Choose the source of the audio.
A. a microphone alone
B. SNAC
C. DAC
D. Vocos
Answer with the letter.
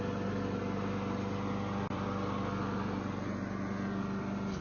A